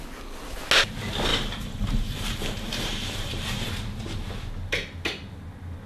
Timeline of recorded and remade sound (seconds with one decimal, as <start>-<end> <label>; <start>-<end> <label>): 0.0-1.3 recorded; 1.3-3.7 remade; 3.7-5.9 recorded